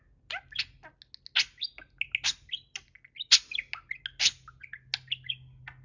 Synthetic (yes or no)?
no